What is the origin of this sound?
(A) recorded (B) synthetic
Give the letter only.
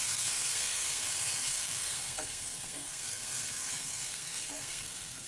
B